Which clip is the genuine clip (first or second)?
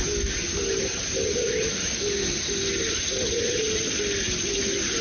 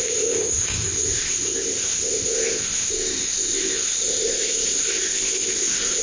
first